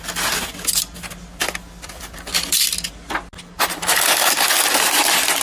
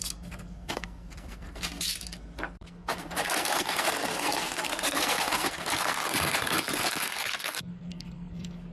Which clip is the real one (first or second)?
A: first